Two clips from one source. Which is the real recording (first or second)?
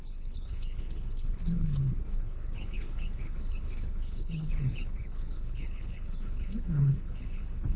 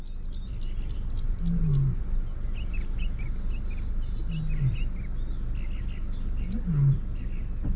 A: second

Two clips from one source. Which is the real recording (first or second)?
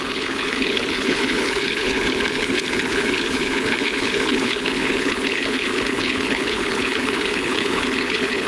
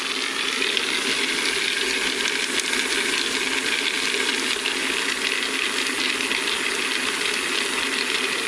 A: second